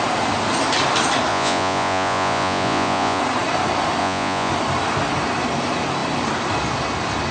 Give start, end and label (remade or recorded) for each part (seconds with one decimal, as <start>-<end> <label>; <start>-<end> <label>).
0.0-1.3 recorded; 1.3-3.2 remade; 3.2-4.0 recorded; 4.0-4.5 remade; 4.5-7.3 recorded